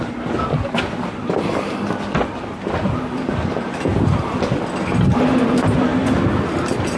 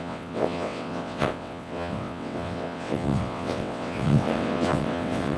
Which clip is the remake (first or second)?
second